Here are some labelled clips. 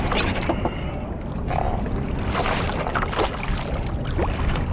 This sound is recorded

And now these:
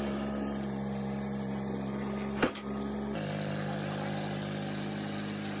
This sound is recorded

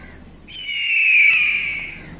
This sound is recorded